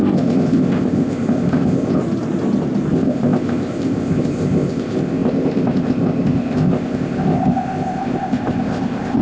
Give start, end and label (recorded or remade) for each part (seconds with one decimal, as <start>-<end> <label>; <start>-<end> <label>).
0.0-2.0 remade; 2.0-2.9 recorded; 2.9-9.2 remade